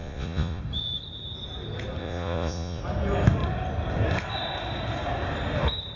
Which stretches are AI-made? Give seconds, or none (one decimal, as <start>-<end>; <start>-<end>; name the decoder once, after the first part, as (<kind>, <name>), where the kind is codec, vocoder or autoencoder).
0.0-0.6 (vocoder, Vocos); 2.0-2.8